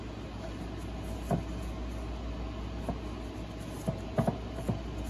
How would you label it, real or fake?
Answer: real